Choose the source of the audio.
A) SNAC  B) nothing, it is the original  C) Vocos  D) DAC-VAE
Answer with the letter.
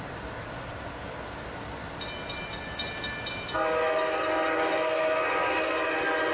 B